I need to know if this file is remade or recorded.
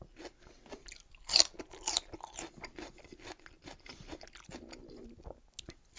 recorded